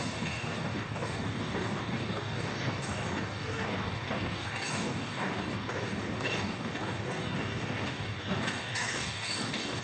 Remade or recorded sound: remade